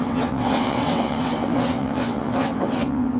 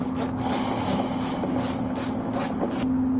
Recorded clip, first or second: second